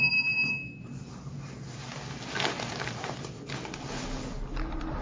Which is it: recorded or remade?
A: recorded